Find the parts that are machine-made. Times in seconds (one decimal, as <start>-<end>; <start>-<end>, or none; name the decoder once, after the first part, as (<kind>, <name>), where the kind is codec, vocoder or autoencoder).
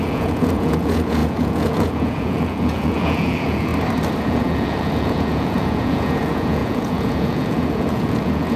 0.0-3.7 (vocoder, Vocos); 4.2-8.6